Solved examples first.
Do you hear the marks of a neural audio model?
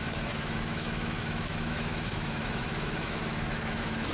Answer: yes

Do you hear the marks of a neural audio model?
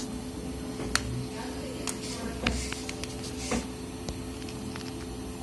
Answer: no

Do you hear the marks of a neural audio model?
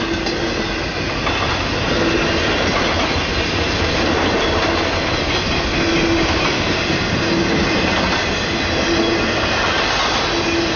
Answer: no